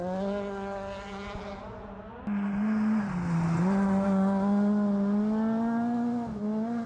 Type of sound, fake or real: real